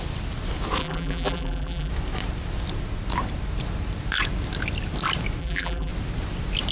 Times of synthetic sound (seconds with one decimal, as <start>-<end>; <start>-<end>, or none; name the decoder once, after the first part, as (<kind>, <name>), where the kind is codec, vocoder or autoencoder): 0.8-1.9 (vocoder, BigVGAN v2); 5.4-5.9